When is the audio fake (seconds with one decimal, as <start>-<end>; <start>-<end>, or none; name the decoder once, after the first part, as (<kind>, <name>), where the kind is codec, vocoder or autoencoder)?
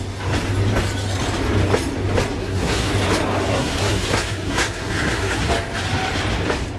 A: 2.4-2.9 (codec, SNAC); 3.5-5.5